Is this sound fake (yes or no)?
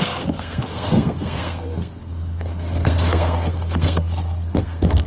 yes